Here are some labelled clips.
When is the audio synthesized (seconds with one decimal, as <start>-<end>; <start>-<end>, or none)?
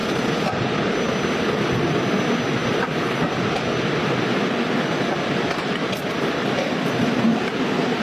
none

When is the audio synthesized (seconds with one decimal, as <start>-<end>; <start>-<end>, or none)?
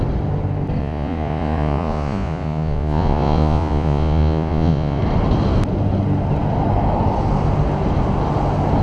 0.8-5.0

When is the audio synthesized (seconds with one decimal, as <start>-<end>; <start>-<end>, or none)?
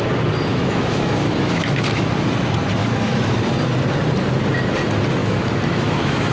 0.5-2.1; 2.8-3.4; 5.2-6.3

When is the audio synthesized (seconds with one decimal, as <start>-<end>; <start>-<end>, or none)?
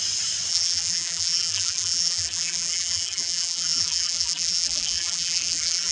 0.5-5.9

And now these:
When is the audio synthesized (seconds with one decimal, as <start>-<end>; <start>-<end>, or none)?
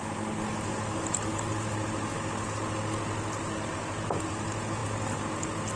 none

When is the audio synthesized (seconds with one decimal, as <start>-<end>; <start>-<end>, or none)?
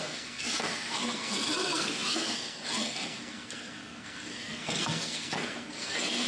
0.0-6.3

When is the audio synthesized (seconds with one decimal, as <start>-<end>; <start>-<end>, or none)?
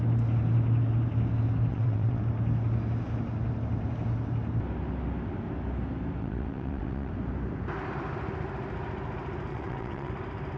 1.7-2.2; 6.2-7.1; 9.5-10.1